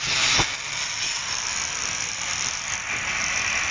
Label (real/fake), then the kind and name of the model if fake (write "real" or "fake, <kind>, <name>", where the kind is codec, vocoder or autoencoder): real